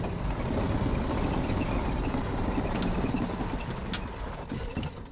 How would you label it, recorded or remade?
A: recorded